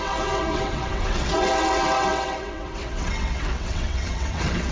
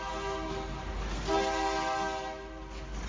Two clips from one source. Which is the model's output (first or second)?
first